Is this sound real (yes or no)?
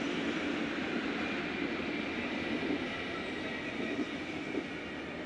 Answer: yes